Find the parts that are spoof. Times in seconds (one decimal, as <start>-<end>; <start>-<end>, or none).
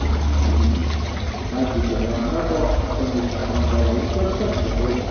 none